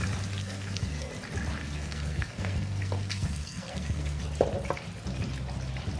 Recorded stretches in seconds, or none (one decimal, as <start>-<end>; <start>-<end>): 0.0-0.4; 1.1-1.6; 4.2-6.0